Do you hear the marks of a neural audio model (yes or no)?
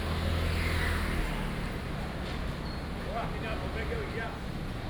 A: no